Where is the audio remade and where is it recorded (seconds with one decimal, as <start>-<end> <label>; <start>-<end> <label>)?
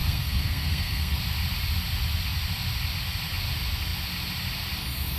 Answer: 0.0-1.2 remade; 1.2-5.2 recorded